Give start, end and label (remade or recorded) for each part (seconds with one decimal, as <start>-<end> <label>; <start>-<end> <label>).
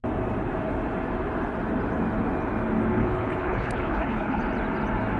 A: 0.0-3.0 recorded; 3.0-4.4 remade; 4.4-5.2 recorded